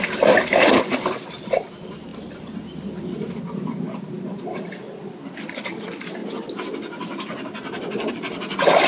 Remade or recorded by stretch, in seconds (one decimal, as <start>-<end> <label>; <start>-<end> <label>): 0.0-8.9 recorded